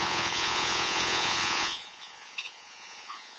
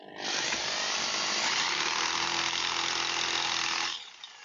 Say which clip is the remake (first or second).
first